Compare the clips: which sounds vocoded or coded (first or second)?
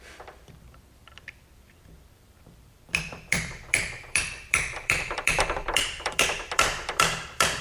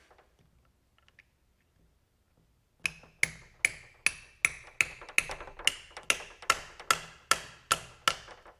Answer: first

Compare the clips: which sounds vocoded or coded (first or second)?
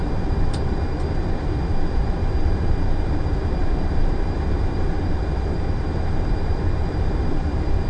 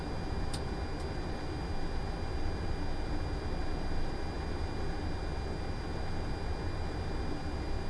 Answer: first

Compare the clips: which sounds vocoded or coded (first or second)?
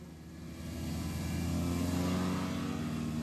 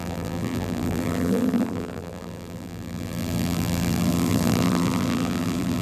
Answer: second